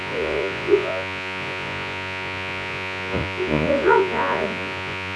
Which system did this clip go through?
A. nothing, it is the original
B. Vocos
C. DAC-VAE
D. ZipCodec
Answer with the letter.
B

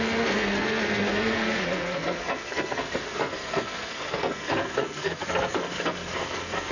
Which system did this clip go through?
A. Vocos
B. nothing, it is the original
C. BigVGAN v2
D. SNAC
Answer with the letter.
D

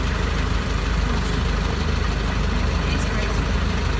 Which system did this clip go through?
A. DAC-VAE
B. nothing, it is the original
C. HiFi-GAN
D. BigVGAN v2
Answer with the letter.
B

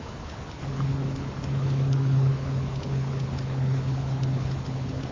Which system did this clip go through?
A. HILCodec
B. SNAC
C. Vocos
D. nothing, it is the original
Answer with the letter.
A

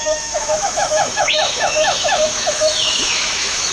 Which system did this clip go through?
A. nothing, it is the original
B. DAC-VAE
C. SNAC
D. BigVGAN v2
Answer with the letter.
B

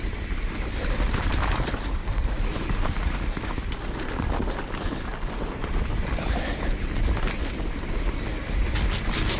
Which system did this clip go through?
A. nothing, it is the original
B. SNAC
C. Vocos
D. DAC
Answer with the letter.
A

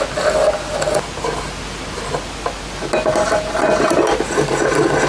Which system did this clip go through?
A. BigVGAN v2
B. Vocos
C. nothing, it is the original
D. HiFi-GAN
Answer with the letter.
C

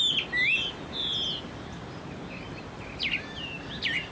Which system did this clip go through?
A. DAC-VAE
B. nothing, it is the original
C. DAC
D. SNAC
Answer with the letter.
B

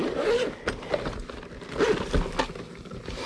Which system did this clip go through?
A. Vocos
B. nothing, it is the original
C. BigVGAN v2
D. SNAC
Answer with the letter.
B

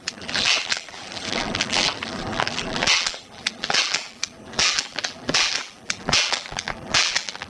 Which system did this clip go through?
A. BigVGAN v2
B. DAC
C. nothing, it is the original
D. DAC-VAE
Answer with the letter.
A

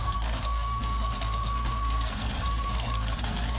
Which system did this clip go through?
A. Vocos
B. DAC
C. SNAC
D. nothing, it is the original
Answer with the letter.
C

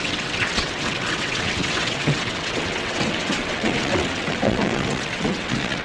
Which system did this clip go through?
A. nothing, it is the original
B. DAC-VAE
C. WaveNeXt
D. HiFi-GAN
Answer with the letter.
C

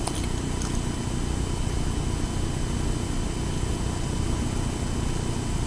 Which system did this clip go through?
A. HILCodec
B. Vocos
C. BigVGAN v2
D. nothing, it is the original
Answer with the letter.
D